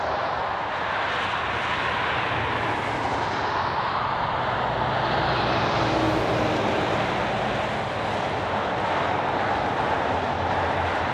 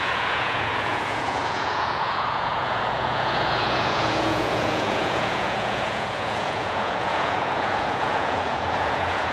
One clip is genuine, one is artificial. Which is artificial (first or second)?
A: second